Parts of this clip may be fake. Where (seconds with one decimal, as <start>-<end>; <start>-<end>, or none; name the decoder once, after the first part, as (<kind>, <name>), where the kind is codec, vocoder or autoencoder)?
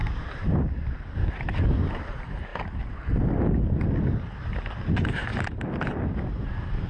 0.0-0.6 (vocoder, BigVGAN v2); 1.2-2.1